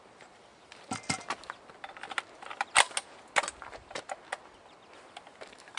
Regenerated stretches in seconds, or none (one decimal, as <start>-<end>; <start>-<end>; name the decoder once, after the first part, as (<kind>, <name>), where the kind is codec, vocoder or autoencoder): none